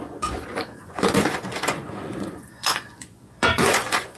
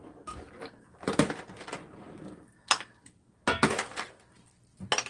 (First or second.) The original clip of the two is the second